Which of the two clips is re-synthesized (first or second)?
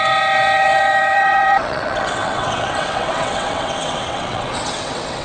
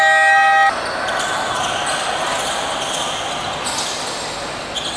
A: first